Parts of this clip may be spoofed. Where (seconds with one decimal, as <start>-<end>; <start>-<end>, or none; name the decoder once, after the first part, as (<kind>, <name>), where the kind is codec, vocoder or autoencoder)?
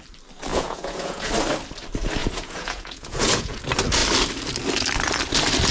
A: 0.5-1.3 (vocoder, Vocos); 2.2-3.6